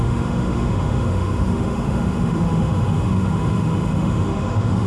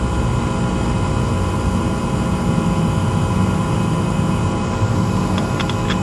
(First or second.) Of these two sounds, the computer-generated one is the first